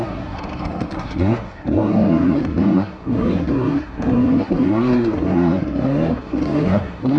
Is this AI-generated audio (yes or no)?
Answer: yes